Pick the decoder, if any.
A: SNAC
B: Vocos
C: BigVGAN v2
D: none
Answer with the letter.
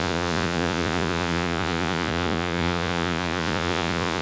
B